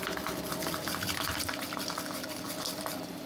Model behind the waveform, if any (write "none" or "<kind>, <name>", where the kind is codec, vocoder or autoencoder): none